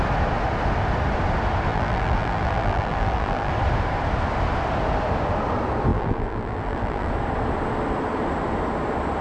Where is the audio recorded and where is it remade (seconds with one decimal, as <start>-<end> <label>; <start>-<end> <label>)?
0.0-1.7 recorded; 1.7-3.5 remade; 3.5-5.9 recorded; 5.9-7.1 remade; 7.1-9.2 recorded